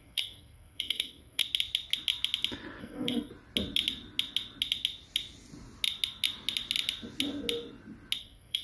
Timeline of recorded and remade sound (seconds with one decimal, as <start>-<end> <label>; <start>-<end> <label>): 0.0-1.4 remade; 1.4-2.8 recorded; 2.8-3.3 remade; 3.3-8.2 recorded; 8.2-8.6 remade